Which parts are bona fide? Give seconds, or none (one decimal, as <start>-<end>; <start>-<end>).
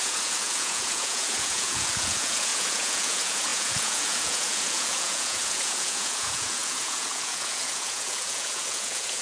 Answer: none